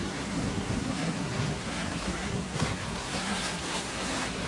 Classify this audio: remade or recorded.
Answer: remade